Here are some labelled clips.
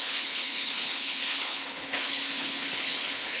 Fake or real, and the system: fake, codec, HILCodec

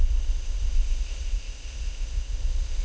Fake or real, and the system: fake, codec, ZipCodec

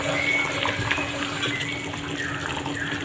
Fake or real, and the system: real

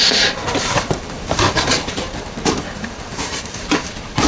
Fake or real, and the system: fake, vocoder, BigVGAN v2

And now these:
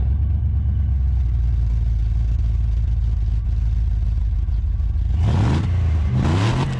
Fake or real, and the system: real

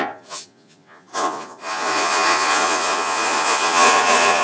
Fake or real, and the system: fake, vocoder, Vocos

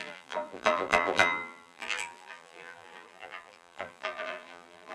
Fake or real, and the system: fake, vocoder, BigVGAN v2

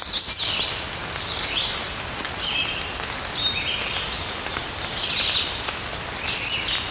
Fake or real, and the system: real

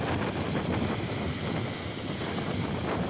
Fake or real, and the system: real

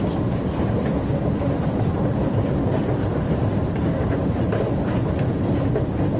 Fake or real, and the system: real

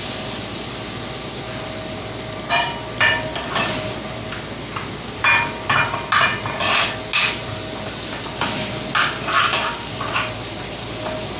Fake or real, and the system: real